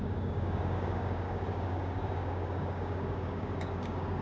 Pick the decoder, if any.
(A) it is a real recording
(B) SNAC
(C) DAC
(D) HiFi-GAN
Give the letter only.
C